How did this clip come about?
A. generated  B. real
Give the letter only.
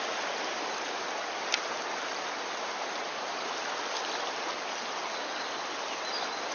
B